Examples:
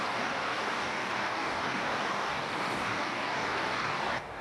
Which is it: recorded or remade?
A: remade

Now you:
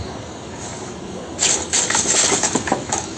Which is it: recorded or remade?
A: remade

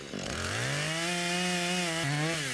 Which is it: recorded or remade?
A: recorded